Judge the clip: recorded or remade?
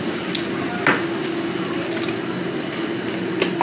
recorded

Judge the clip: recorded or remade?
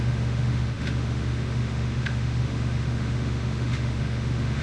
remade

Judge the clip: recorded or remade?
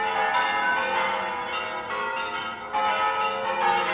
recorded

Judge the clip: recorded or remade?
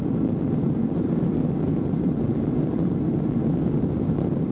recorded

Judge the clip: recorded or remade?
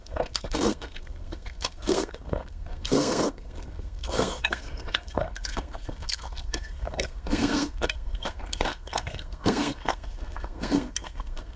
remade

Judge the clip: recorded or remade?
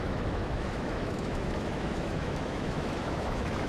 remade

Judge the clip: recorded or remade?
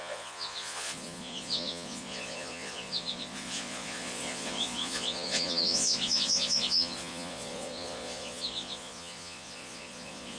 remade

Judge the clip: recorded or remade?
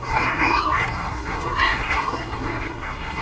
remade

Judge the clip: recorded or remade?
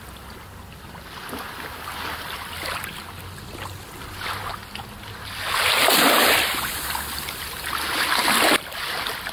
recorded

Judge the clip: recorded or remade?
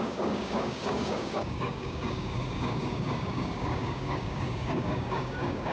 remade